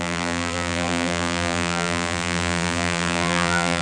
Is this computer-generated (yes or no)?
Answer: yes